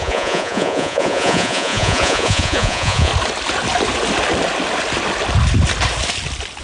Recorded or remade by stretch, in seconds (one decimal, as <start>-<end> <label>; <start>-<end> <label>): 0.0-3.1 remade; 3.1-6.6 recorded